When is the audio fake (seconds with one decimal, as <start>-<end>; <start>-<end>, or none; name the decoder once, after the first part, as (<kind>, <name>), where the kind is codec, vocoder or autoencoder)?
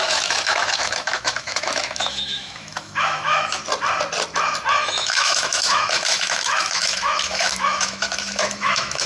0.0-3.6 (autoencoder, DAC-VAE); 4.7-9.1